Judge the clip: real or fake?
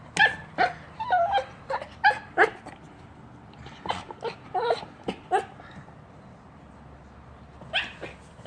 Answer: real